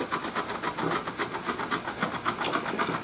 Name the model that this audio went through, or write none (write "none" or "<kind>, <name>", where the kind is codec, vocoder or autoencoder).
none